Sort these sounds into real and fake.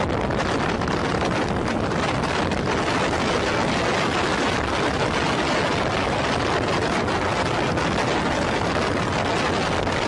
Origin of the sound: real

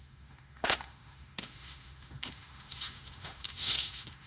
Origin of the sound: fake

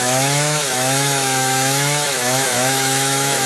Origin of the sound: fake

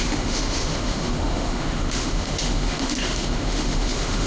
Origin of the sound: fake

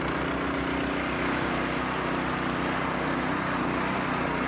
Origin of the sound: real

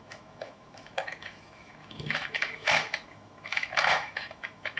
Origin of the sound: fake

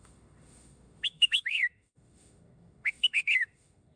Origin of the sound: fake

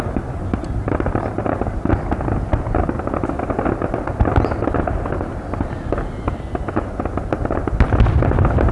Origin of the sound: real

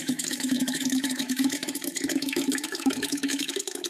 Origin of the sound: fake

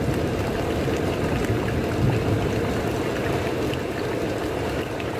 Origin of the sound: real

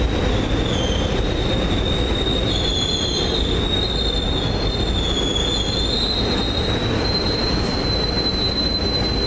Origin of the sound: real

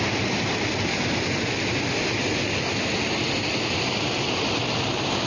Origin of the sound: real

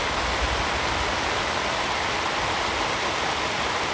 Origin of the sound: real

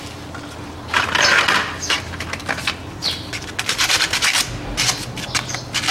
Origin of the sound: real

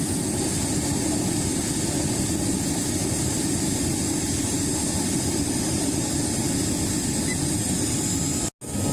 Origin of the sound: real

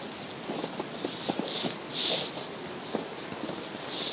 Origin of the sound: real